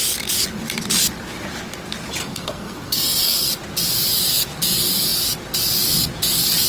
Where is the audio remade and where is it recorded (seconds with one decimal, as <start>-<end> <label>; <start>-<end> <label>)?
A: 0.0-2.2 recorded; 2.2-3.5 remade; 3.5-6.7 recorded